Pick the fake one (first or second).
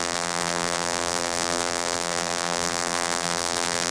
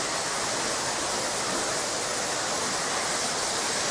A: first